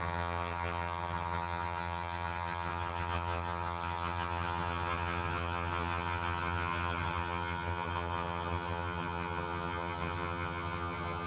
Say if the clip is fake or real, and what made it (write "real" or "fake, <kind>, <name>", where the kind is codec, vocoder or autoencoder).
fake, vocoder, HiFi-GAN